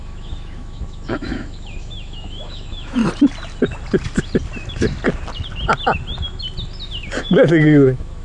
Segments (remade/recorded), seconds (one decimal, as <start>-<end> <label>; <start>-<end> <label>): 0.0-3.0 remade; 3.0-7.2 recorded; 7.2-8.2 remade

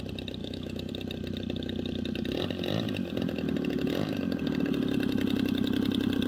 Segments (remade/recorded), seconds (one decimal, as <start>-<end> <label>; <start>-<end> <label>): 0.0-0.4 recorded; 0.4-0.9 remade; 0.9-6.3 recorded

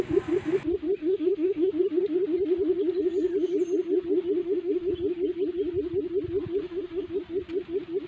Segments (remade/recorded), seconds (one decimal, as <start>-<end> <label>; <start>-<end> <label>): 0.0-1.0 recorded; 1.0-1.7 remade; 1.7-4.4 recorded; 4.4-4.9 remade; 4.9-6.6 recorded; 6.6-7.1 remade; 7.1-8.1 recorded

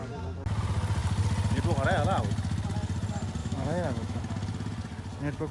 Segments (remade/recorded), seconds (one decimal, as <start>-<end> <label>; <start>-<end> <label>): 0.0-3.4 recorded; 3.4-4.2 remade; 4.2-5.5 recorded

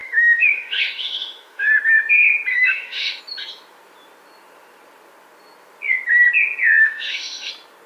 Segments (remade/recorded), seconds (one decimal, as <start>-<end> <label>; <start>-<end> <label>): 0.0-1.7 remade; 1.7-2.5 recorded; 2.5-3.2 remade; 3.2-6.8 recorded; 6.8-7.5 remade; 7.5-7.9 recorded

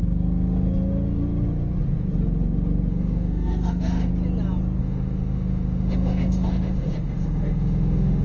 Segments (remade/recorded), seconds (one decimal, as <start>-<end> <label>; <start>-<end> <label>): 0.0-2.9 recorded; 2.9-4.1 remade; 4.1-4.8 recorded; 4.8-8.2 remade

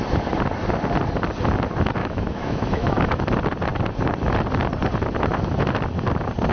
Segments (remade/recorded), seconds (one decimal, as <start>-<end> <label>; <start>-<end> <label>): 0.0-2.0 recorded; 2.0-3.2 remade; 3.2-6.5 recorded

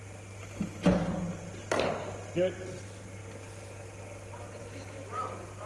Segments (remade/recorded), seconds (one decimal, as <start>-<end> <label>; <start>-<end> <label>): 0.0-4.6 recorded; 4.6-5.2 remade; 5.2-5.7 recorded